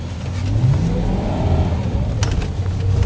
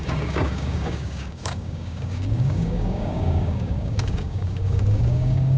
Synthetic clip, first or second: second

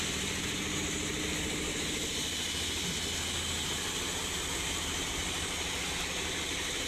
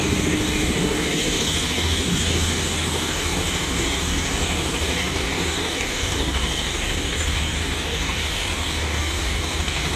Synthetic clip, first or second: second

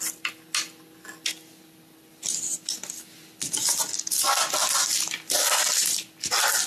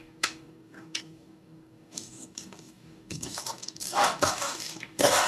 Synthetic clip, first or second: second